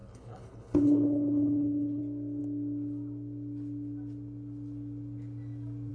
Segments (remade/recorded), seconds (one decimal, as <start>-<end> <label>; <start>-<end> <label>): 0.0-2.0 remade; 2.0-5.9 recorded